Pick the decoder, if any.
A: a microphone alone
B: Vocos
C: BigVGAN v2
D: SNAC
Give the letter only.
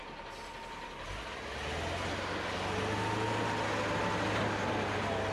A